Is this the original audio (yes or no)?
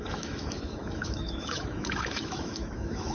no